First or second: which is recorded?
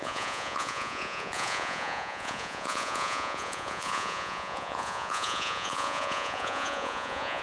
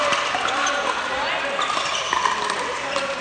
second